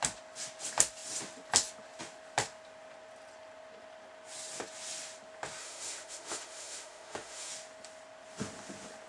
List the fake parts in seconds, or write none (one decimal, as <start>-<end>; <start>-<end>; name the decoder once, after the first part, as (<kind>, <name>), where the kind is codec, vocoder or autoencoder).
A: 5.6-7.5 (autoencoder, DAC-VAE)